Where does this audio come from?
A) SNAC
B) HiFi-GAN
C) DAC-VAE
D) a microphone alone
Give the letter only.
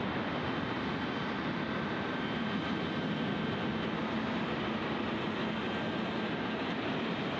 D